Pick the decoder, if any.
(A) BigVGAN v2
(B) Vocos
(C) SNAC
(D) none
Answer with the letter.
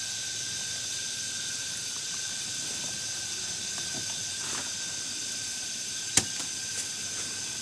D